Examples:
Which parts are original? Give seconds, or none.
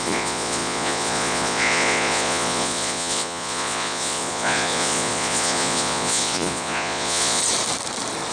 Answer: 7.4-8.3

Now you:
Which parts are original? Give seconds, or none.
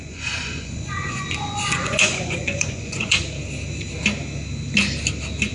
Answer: 3.2-5.5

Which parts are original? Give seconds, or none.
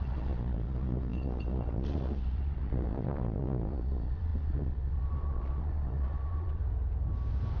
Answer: 6.6-7.6